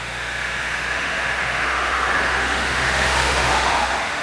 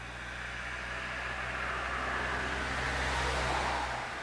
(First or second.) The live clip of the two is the second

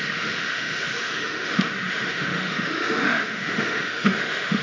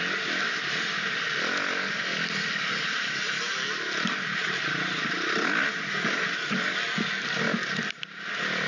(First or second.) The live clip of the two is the second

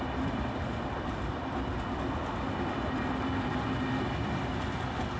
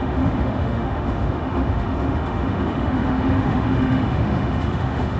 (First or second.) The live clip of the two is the first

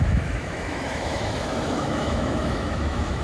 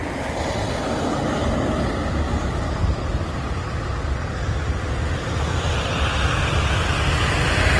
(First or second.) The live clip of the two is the second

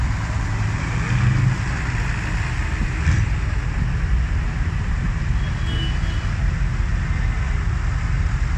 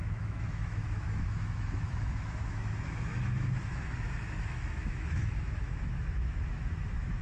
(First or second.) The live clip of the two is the first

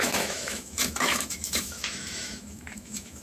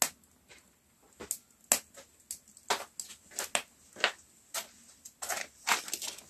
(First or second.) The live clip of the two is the second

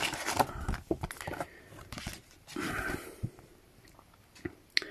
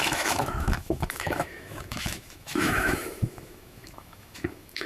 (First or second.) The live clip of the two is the first